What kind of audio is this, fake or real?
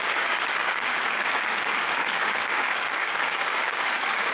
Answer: fake